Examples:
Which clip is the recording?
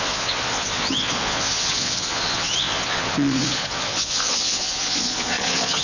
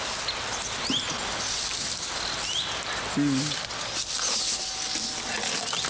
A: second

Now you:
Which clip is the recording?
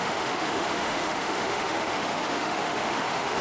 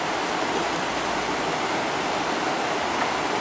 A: second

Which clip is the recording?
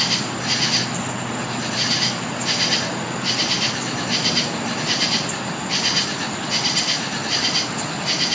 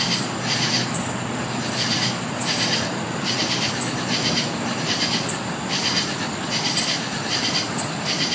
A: first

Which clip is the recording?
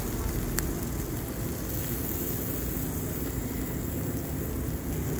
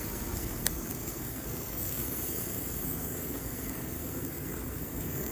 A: first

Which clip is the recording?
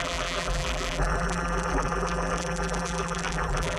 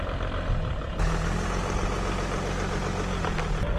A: second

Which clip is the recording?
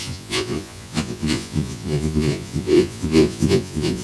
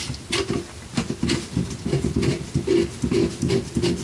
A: second